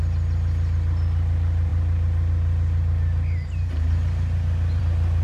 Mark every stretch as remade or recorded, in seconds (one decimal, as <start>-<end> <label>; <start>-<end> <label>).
0.0-5.2 recorded